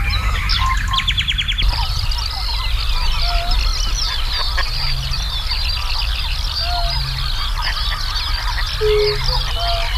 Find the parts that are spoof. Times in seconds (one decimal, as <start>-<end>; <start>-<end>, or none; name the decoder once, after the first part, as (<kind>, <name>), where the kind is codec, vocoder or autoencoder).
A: none